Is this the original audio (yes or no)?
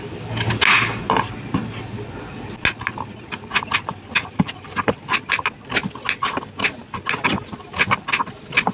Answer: yes